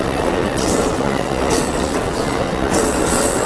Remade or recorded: remade